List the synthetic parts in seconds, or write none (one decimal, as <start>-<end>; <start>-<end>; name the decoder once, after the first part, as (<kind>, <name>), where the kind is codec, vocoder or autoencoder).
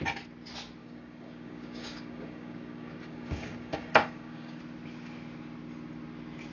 0.8-4.6 (codec, DAC)